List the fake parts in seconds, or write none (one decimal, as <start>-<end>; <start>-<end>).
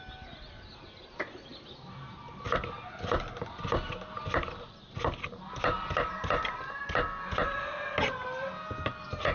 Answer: none